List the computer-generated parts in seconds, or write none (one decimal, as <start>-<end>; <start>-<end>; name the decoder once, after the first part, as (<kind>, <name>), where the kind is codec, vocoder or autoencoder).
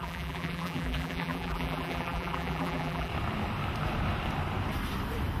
0.0-3.1 (vocoder, BigVGAN v2)